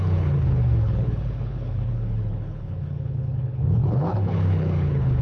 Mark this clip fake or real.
fake